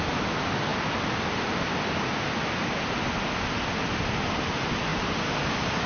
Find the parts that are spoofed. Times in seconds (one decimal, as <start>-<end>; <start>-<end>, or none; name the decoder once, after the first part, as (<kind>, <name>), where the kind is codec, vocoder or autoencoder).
none